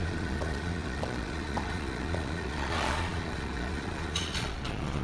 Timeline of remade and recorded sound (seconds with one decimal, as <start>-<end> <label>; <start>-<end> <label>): 0.0-5.0 remade